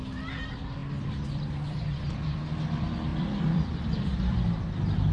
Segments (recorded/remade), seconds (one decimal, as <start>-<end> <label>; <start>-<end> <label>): 0.0-0.8 recorded; 0.8-2.1 remade; 2.1-3.1 recorded; 3.1-5.1 remade